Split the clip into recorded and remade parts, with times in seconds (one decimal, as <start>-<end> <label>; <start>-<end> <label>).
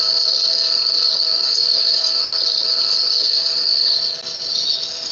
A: 0.0-1.3 recorded; 1.3-2.2 remade; 2.2-5.1 recorded